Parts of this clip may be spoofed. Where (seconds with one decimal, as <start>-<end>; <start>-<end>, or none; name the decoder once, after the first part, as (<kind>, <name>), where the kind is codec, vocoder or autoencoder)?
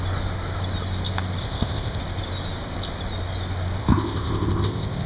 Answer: 1.4-2.0 (codec, ZipCodec); 3.8-5.1